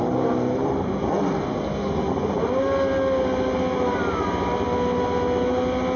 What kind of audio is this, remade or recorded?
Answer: recorded